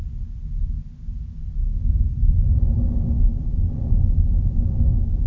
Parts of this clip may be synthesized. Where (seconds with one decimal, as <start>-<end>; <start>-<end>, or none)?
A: none